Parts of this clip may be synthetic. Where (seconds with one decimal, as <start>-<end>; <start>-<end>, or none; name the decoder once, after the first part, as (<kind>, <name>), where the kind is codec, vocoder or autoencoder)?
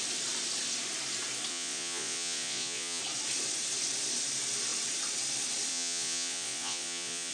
1.5-3.0 (vocoder, Vocos); 5.7-7.3